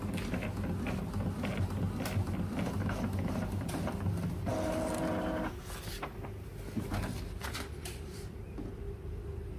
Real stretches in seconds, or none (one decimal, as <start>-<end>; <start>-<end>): 0.0-9.6